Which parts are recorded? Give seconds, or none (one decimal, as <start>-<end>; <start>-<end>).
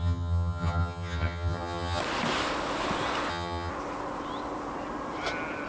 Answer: 2.0-3.3; 3.7-5.7